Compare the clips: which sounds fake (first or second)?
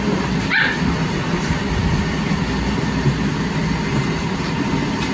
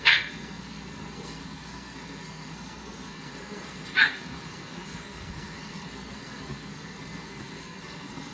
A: second